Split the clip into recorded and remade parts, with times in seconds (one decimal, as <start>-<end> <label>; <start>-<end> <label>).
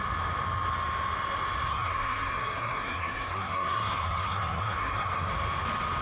0.0-1.7 recorded; 1.7-5.3 remade; 5.3-6.0 recorded